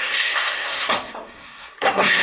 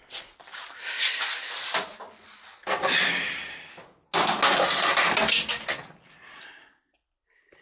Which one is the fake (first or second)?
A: first